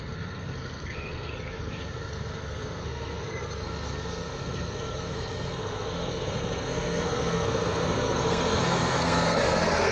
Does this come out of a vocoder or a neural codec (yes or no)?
yes